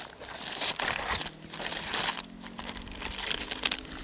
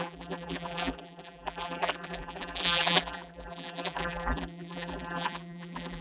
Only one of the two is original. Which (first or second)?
first